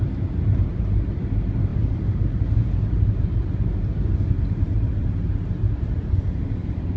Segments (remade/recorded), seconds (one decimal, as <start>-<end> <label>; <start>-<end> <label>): 0.0-7.0 remade